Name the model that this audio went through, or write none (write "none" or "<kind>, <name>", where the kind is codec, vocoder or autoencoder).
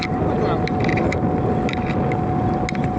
none